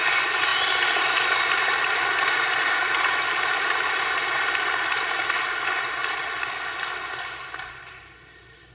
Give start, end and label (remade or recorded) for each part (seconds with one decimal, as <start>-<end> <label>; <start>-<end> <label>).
0.0-6.0 remade; 6.0-7.8 recorded; 7.8-8.7 remade